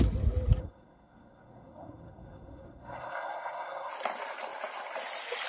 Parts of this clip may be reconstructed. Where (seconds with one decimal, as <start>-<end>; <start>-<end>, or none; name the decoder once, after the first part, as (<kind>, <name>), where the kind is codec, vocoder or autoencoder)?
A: 0.6-3.9 (codec, SNAC)